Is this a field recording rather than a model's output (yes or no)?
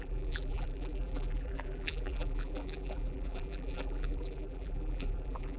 no